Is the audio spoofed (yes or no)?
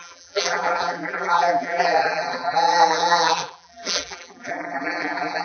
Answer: yes